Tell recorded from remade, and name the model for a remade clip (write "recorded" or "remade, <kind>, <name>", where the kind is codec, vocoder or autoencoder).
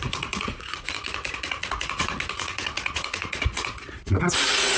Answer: remade, vocoder, Vocos